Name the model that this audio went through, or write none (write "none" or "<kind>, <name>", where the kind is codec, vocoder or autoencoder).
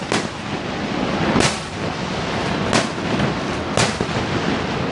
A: none